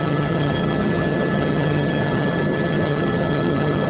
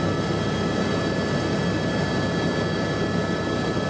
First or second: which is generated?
first